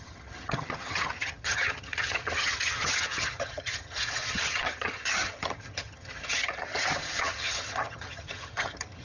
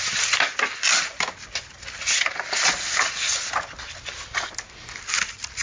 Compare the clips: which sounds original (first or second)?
second